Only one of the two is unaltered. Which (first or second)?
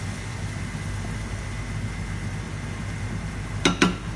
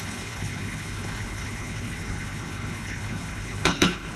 first